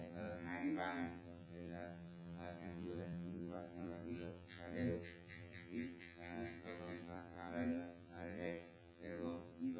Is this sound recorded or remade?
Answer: remade